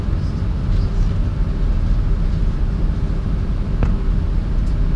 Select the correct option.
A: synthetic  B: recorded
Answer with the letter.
B